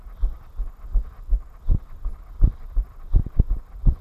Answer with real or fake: real